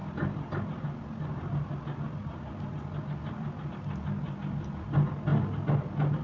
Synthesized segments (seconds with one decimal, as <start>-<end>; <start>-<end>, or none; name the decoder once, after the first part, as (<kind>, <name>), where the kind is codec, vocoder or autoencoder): none